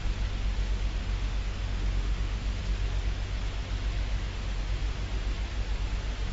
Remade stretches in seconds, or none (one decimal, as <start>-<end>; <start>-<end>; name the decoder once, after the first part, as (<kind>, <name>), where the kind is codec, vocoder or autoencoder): 1.0-2.6 (autoencoder, DAC-VAE); 4.1-4.6